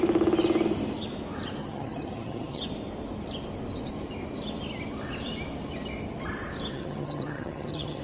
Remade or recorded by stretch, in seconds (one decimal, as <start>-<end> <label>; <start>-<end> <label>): 0.0-1.6 recorded; 1.6-2.6 remade; 2.6-6.7 recorded; 6.7-8.0 remade